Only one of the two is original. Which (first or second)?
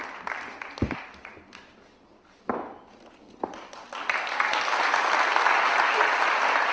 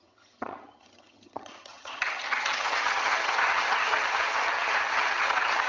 first